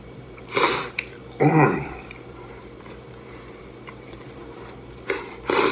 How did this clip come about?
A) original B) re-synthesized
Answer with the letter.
B